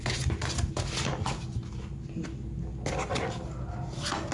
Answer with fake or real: real